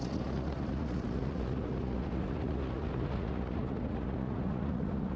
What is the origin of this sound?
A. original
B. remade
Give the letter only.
B